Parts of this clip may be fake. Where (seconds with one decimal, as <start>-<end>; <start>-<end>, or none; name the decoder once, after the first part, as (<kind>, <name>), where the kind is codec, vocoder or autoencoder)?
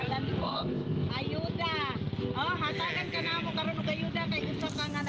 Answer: 0.4-1.1 (codec, ZipCodec)